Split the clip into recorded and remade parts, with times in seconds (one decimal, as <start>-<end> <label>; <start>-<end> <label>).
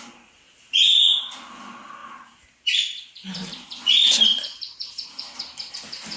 0.0-2.0 recorded; 2.0-5.7 remade; 5.7-6.2 recorded